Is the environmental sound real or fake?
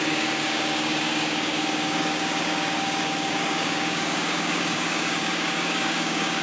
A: fake